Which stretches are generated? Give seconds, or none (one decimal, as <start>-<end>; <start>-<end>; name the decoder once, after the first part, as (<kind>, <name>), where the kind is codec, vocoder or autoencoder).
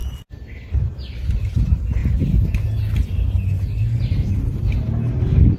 none